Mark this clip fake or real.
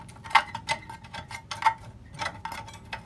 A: real